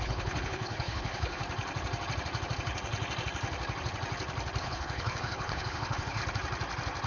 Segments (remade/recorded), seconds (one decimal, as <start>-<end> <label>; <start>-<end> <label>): 0.0-1.4 remade; 1.4-4.6 recorded; 4.6-6.2 remade; 6.2-7.1 recorded